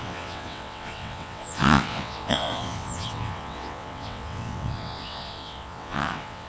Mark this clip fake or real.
fake